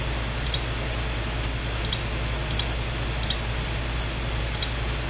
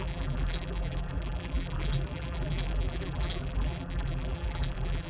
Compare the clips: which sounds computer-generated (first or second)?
second